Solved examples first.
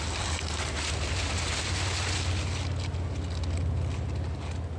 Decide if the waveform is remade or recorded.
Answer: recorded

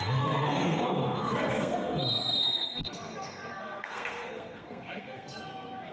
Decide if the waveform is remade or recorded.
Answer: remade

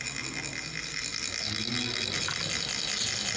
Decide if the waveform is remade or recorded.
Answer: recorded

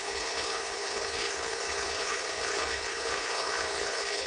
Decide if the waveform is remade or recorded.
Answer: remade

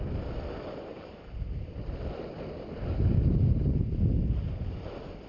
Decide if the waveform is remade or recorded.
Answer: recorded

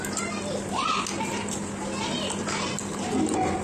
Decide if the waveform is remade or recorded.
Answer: recorded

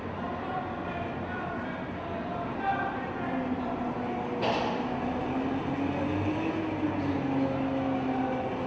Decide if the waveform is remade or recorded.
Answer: recorded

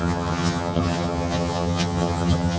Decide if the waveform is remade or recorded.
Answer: remade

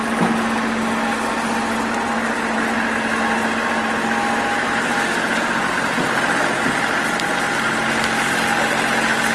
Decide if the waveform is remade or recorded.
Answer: recorded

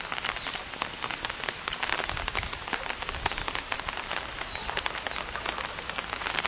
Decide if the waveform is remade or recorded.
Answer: remade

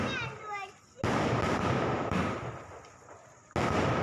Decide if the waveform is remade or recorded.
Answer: recorded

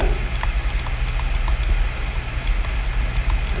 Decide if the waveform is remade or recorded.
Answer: recorded